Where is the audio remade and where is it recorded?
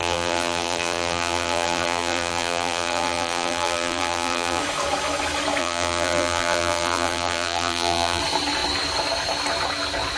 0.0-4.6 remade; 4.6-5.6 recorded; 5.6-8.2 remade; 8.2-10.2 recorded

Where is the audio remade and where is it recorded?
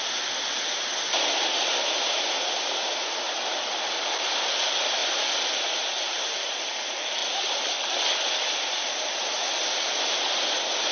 0.0-10.9 recorded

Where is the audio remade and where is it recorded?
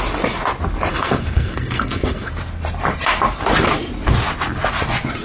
0.0-0.9 recorded; 0.9-2.3 remade; 2.3-5.2 recorded